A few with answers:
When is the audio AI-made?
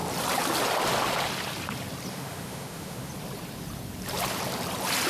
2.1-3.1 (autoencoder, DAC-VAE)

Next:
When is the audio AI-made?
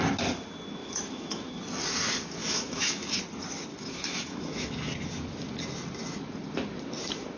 0.8-1.6 (autoencoder, DAC-VAE); 2.4-3.2; 3.7-4.7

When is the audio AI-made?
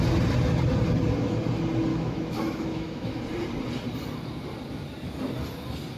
1.9-3.2 (autoencoder, DAC-VAE)